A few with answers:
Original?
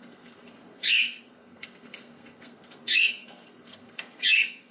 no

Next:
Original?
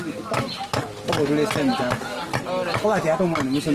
yes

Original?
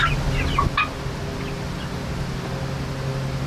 yes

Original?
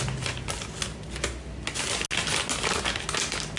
yes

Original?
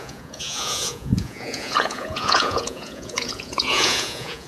no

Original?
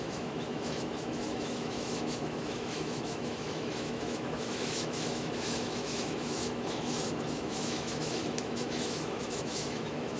no